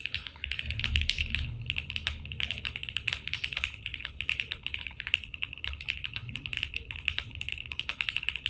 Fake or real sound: fake